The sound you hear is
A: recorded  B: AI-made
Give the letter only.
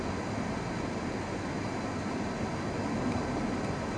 A